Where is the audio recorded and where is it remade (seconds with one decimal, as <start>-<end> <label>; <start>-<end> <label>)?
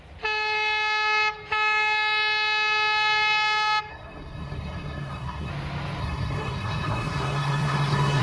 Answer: 0.0-3.9 recorded; 3.9-5.5 remade; 5.5-6.0 recorded; 6.0-8.2 remade